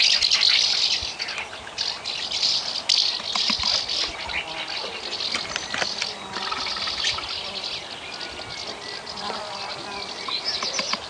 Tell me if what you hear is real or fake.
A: real